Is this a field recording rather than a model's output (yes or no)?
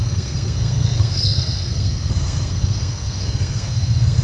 no